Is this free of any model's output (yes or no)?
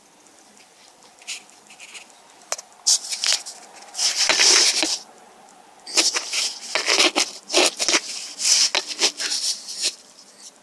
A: yes